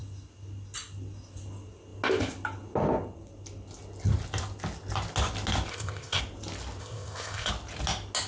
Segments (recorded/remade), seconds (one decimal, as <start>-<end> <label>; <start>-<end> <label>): 0.0-5.7 recorded; 5.7-6.2 remade; 6.2-6.8 recorded; 6.8-7.5 remade; 7.5-8.3 recorded